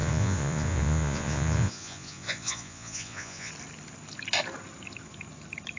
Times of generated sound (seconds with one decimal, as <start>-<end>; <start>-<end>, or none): 0.0-3.5

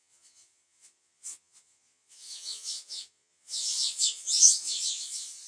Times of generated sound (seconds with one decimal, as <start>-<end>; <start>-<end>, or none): 0.0-5.5

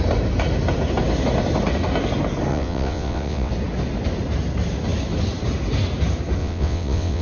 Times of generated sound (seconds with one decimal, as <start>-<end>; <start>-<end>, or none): 2.5-3.5; 6.4-7.2

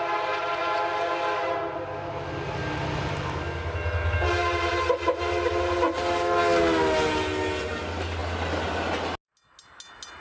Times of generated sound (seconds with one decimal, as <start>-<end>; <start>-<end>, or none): none